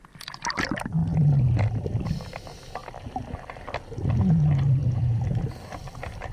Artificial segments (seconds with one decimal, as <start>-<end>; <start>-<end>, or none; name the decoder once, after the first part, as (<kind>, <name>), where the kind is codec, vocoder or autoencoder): none